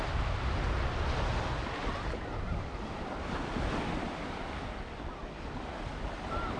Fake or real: real